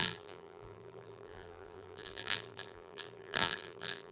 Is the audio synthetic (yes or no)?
yes